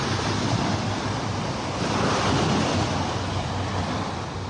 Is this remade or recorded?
remade